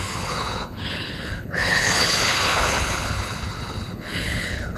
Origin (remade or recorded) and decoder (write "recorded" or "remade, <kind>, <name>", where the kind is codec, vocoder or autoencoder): remade, codec, HILCodec